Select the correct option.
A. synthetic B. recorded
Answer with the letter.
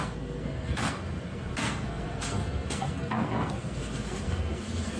A